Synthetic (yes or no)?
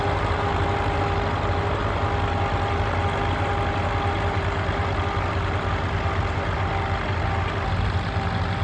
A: no